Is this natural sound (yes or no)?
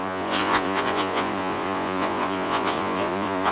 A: no